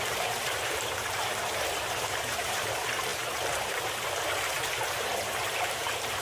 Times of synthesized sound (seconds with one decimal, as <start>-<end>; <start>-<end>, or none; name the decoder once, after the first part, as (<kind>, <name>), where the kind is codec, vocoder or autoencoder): 0.0-3.1 (vocoder, BigVGAN v2); 3.7-6.2